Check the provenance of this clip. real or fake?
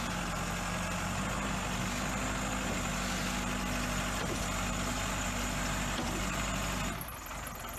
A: real